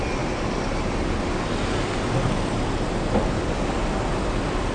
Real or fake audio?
real